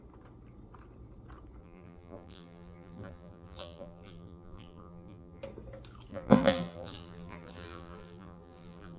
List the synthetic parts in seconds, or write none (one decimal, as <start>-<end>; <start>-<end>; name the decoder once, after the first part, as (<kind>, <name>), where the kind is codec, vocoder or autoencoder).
1.6-5.4 (vocoder, BigVGAN v2); 6.1-9.0